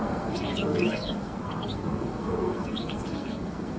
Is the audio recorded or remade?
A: remade